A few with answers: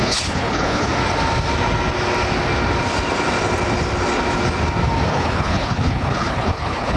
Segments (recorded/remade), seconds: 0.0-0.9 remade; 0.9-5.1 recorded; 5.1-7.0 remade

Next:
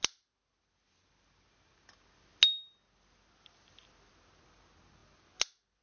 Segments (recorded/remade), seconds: 0.0-5.8 recorded

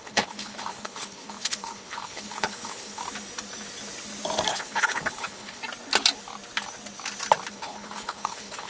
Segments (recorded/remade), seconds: 0.0-3.0 remade; 3.0-4.5 recorded; 4.5-5.6 remade; 5.6-7.5 recorded; 7.5-8.7 remade

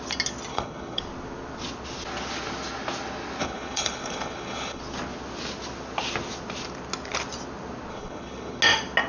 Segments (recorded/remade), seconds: 0.0-0.5 recorded; 0.5-1.0 remade; 1.0-3.4 recorded; 3.4-4.8 remade; 4.8-7.9 recorded; 7.9-8.6 remade; 8.6-9.1 recorded

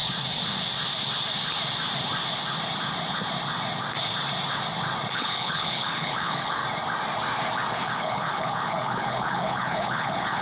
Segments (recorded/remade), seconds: 0.0-5.1 recorded; 5.1-6.6 remade; 6.6-7.7 recorded; 7.7-10.4 remade

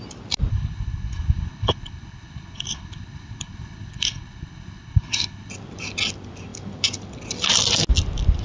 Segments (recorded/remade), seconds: 0.0-0.5 recorded; 0.5-5.5 remade; 5.5-8.4 recorded